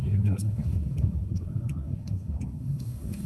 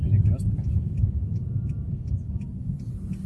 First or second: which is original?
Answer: second